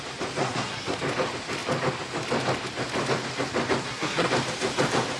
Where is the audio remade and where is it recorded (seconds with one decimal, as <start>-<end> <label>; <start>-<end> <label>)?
0.0-0.4 recorded; 0.4-1.0 remade; 1.0-3.8 recorded; 3.8-4.3 remade; 4.3-5.2 recorded